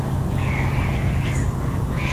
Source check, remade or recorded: remade